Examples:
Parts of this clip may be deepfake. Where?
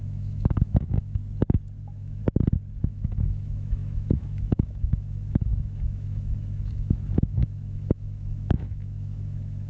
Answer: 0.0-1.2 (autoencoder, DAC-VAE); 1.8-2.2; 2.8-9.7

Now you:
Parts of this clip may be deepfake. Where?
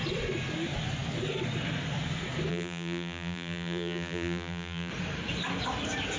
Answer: 2.5-4.9 (vocoder, BigVGAN v2)